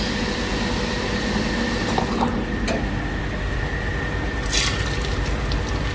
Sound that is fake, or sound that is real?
real